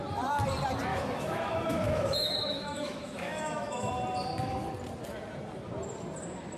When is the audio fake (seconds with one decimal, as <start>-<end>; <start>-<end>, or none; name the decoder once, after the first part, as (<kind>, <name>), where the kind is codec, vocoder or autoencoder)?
0.9-3.9 (autoencoder, DAC-VAE)